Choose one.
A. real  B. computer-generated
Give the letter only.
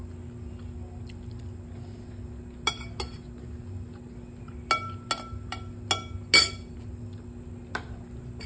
A